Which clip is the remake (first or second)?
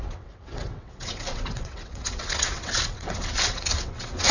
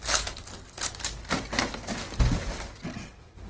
first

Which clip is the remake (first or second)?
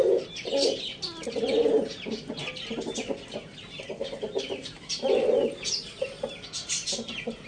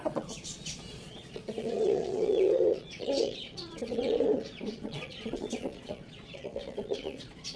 second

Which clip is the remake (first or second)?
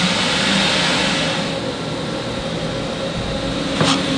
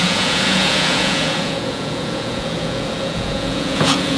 second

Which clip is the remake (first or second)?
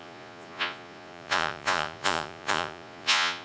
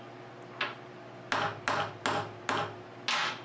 first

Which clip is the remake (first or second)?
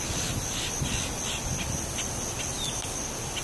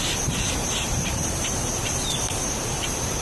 second